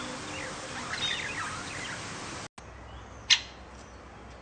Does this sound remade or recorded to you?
recorded